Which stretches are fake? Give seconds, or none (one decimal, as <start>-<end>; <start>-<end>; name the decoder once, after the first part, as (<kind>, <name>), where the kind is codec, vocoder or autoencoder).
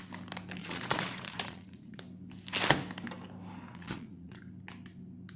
0.6-2.0 (vocoder, Vocos); 3.7-4.4